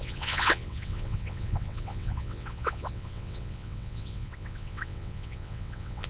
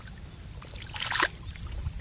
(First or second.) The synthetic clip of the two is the first